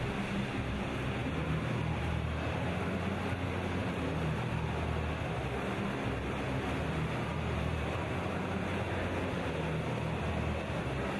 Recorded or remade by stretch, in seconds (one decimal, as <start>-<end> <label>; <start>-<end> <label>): 0.0-3.8 recorded; 3.8-4.4 remade; 4.4-7.3 recorded; 7.3-8.9 remade; 8.9-11.2 recorded